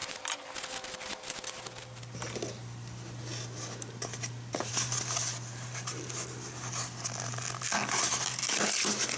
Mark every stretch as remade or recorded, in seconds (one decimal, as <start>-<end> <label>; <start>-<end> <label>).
0.0-9.2 recorded